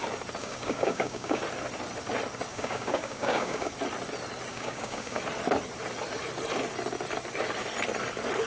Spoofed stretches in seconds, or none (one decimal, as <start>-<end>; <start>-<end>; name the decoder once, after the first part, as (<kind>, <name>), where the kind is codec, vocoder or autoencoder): 0.4-1.4 (codec, DAC); 2.5-3.7; 4.5-5.2